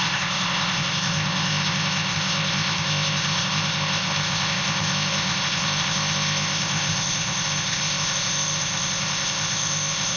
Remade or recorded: remade